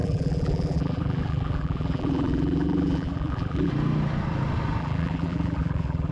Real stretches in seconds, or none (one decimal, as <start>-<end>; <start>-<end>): 3.7-4.8